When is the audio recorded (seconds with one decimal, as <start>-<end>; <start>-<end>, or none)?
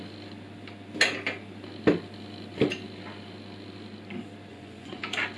0.0-4.5; 5.0-5.4